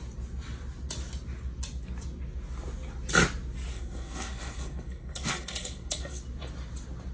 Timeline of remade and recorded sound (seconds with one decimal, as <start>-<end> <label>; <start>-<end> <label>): 0.0-3.7 recorded; 3.7-6.2 remade; 6.2-7.1 recorded